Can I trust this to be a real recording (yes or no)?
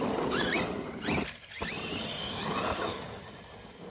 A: yes